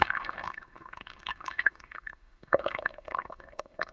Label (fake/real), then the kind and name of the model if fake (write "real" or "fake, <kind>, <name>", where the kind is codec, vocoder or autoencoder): fake, autoencoder, DAC-VAE